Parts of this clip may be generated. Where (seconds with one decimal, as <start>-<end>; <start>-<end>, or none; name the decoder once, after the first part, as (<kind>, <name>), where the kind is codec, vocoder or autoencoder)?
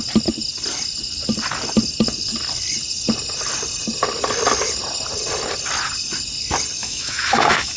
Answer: 6.8-7.8 (autoencoder, DAC-VAE)